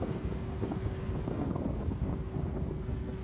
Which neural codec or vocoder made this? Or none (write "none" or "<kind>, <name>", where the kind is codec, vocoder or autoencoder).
codec, SNAC